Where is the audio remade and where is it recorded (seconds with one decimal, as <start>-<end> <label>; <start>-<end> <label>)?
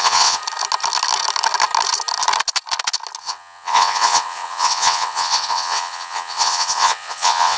0.0-0.4 remade; 0.4-3.2 recorded; 3.2-7.6 remade